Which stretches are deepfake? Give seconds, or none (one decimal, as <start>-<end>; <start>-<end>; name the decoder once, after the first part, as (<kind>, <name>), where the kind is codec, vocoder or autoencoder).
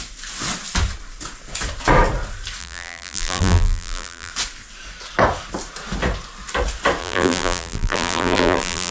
2.6-4.3 (vocoder, BigVGAN v2); 7.0-8.9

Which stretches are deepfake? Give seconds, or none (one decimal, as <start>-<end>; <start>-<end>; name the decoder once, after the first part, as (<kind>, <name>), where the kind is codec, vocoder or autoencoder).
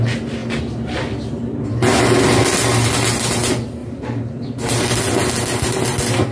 3.8-4.8 (vocoder, BigVGAN v2)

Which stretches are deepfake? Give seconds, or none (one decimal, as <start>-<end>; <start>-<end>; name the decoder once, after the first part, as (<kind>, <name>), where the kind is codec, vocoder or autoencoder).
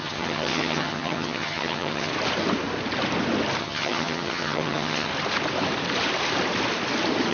0.0-2.1 (vocoder, HiFi-GAN); 3.6-5.1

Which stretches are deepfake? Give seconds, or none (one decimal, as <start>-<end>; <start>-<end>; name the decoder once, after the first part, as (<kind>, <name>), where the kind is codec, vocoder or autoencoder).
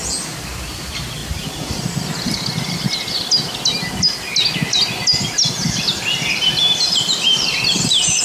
1.2-2.0 (vocoder, BigVGAN v2); 6.6-8.2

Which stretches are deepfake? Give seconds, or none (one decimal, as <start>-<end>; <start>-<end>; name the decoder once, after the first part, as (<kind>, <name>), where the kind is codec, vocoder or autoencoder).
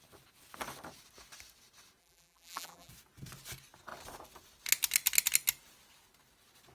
2.0-2.9 (vocoder, BigVGAN v2)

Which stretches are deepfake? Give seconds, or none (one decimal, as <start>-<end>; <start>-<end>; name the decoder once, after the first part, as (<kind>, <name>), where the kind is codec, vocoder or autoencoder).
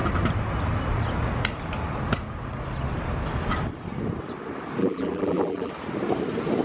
4.8-5.7 (vocoder, BigVGAN v2)